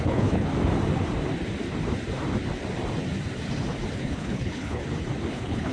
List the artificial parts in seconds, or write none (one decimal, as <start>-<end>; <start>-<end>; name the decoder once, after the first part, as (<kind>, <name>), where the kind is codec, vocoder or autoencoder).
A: 0.0-0.5 (codec, HILCodec); 3.9-4.8; 5.3-5.7